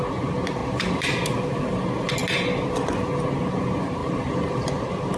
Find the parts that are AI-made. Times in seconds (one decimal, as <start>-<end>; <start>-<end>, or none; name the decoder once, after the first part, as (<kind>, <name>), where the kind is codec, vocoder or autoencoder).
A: 0.6-1.6 (vocoder, BigVGAN v2); 4.0-5.2